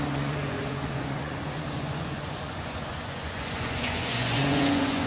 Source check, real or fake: fake